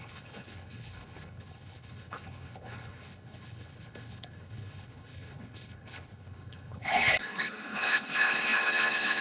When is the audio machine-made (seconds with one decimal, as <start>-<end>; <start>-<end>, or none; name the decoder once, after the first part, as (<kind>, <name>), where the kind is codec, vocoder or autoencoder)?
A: 0.0-9.2 (codec, HILCodec)